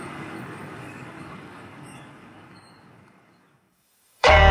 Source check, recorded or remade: remade